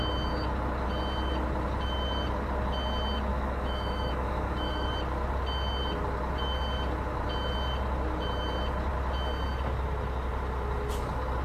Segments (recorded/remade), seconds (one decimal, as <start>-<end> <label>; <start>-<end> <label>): 0.0-3.3 recorded; 3.3-4.9 remade; 4.9-11.4 recorded